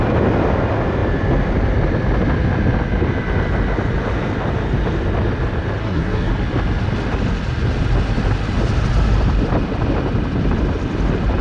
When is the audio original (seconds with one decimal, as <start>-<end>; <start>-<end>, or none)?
0.0-5.8; 6.3-11.4